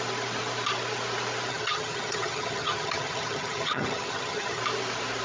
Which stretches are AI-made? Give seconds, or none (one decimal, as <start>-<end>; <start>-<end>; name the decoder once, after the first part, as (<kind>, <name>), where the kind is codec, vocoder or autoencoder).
1.5-4.6 (vocoder, HiFi-GAN)